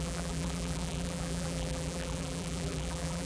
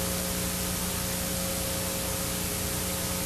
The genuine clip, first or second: second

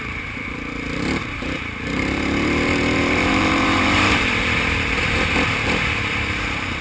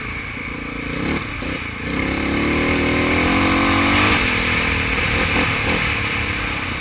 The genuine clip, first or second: second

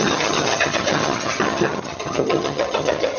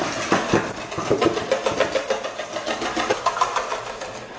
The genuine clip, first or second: second